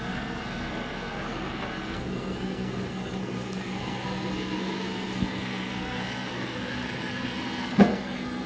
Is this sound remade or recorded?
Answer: remade